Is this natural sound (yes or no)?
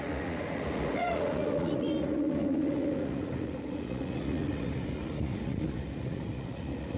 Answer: no